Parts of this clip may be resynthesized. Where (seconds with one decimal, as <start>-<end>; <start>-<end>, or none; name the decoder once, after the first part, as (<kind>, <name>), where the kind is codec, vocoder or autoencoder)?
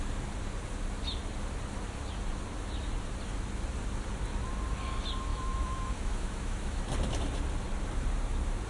5.3-6.8 (autoencoder, DAC-VAE)